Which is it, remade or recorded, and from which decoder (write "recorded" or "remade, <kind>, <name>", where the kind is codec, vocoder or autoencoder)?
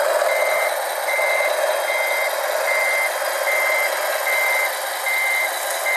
recorded